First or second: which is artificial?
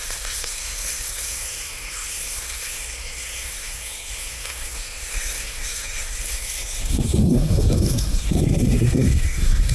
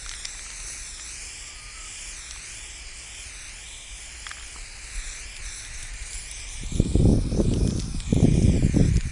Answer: first